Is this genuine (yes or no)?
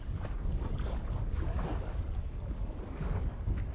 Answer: no